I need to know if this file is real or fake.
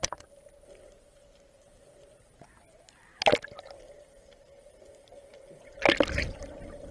real